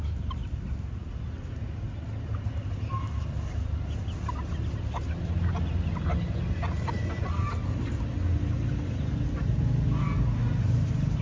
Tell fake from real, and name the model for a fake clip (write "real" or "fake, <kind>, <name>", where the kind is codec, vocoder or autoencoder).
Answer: real